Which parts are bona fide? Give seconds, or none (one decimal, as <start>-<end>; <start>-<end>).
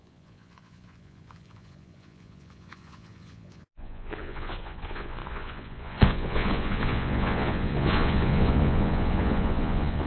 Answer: none